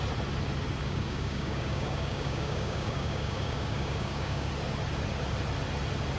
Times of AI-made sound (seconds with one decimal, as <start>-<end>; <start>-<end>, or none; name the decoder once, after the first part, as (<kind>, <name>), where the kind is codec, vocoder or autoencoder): 0.8-4.5 (codec, DAC)